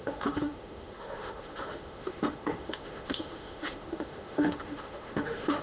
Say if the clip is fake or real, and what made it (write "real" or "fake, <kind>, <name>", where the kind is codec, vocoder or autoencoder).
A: fake, autoencoder, DAC-VAE